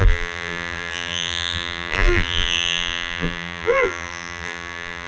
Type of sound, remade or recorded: remade